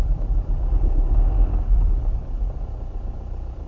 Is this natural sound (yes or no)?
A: no